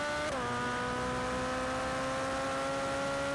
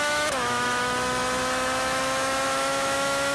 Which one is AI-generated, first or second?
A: second